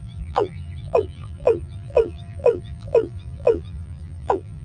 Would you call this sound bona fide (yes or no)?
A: no